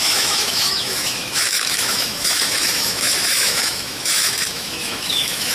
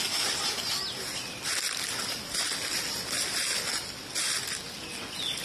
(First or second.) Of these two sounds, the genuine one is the second